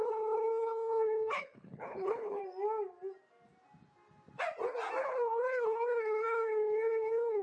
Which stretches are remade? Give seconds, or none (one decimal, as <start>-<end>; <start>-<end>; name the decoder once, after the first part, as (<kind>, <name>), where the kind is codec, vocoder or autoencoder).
0.0-2.4 (codec, HILCodec); 5.0-7.4